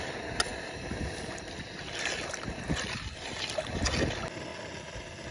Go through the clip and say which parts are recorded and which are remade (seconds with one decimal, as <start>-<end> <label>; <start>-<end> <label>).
0.0-5.3 recorded